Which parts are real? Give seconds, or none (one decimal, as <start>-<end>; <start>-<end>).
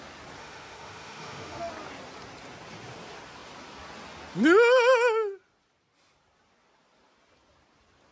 0.0-0.4; 1.7-8.1